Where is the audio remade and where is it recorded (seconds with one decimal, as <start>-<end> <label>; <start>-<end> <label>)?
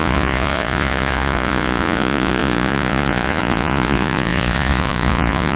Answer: 0.0-5.6 remade